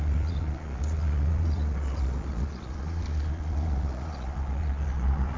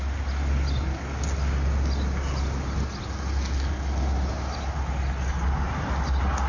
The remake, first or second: first